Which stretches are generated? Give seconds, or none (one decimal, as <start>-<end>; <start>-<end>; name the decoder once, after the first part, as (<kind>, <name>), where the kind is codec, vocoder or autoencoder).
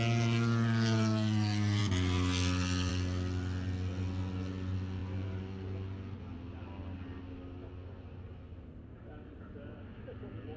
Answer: none